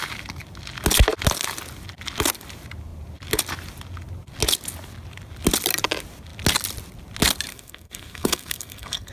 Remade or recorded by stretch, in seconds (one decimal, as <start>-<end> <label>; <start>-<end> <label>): 0.0-7.5 recorded; 7.5-9.1 remade